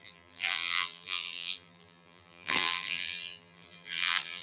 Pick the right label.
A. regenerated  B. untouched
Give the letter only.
A